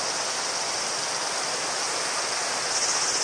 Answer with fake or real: real